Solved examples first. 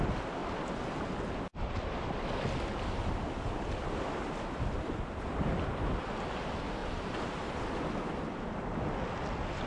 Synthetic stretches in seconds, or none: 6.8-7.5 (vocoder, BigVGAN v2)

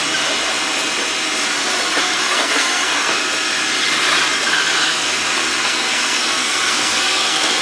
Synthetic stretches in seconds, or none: 2.0-3.2 (codec, SNAC); 4.5-7.6

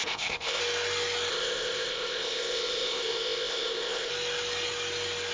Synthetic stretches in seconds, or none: 0.0-0.6 (codec, ZipCodec); 1.3-4.1

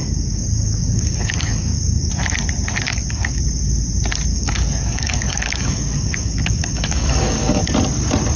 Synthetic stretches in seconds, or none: 0.0-2.1 (codec, DAC); 2.9-3.4; 4.3-7.6

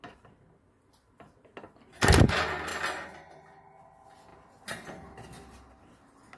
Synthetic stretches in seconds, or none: none

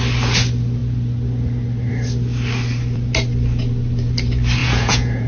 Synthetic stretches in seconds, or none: 4.6-5.3 (vocoder, Vocos)

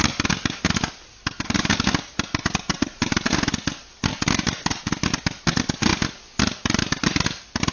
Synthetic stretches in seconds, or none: none

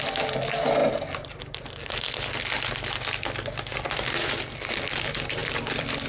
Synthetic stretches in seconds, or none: 0.8-1.8 (vocoder, BigVGAN v2); 5.4-6.1